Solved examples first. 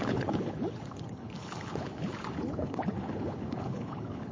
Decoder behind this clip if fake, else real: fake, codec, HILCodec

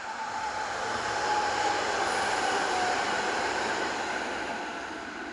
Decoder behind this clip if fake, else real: real